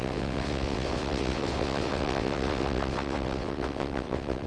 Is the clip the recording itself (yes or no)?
no